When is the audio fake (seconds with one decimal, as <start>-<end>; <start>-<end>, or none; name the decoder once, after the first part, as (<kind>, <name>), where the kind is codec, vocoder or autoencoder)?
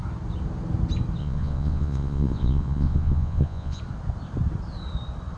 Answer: 1.2-3.8 (vocoder, Vocos)